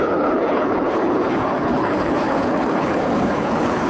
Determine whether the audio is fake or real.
fake